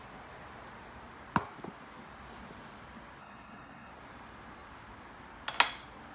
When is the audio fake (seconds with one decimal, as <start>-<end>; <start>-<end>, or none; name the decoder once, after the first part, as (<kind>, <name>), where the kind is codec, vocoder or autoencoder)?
3.2-3.9 (codec, HILCodec)